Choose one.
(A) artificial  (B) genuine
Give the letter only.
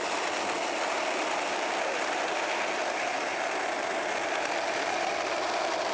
B